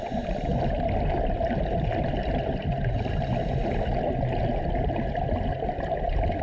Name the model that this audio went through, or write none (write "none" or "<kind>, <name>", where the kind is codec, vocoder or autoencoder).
none